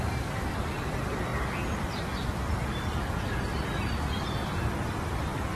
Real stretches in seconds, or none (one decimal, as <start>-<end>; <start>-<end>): 0.0-5.6